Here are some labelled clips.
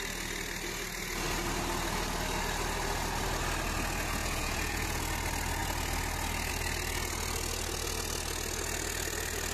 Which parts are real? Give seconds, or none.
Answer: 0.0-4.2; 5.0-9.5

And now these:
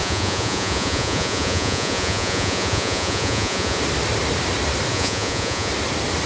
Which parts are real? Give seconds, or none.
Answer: 3.8-4.9; 5.7-6.3

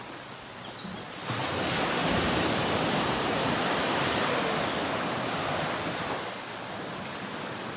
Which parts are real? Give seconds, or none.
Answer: 0.0-2.0; 3.5-7.8

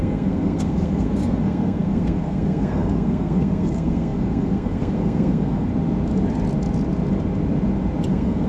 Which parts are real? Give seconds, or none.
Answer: 5.7-8.1

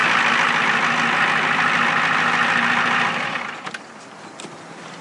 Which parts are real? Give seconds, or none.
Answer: 0.0-5.0